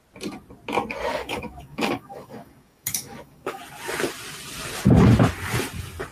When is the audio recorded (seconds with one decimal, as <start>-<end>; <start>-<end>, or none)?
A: 0.0-1.1; 3.6-6.1